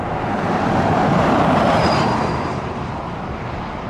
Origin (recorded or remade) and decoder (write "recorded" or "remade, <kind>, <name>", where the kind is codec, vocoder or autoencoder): remade, vocoder, BigVGAN v2